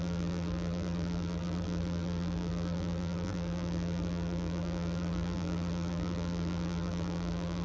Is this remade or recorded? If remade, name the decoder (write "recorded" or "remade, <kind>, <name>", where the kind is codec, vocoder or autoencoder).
remade, vocoder, BigVGAN v2